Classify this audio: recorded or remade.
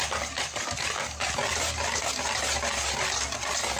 recorded